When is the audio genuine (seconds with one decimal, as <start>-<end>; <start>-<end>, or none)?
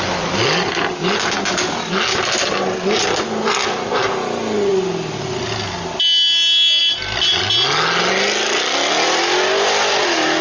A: 0.0-10.4